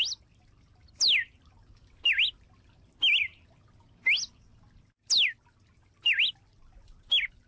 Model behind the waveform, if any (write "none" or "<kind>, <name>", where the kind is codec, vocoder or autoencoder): none